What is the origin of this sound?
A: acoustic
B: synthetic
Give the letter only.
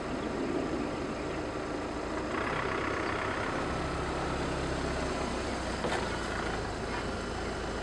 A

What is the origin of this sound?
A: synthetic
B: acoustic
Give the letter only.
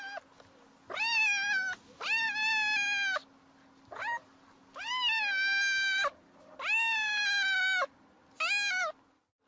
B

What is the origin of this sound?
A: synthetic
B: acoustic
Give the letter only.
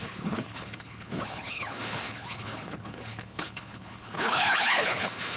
A